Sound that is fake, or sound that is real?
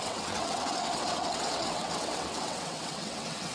fake